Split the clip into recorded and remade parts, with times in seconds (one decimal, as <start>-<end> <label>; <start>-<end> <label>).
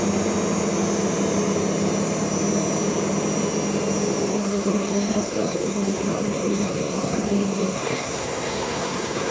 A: 0.0-4.3 recorded; 4.3-9.3 remade